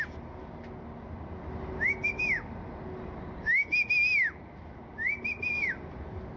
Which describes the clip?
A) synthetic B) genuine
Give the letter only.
B